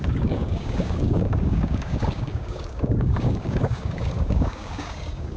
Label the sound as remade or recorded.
remade